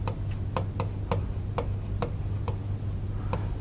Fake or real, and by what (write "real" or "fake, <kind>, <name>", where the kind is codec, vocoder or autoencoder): real